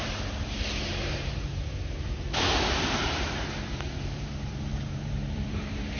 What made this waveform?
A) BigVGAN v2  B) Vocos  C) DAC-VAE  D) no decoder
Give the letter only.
A